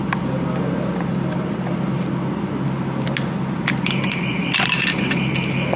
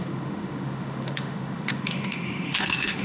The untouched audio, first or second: first